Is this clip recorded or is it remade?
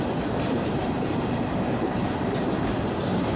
remade